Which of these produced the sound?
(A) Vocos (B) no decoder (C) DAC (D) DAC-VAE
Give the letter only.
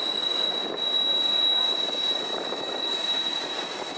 B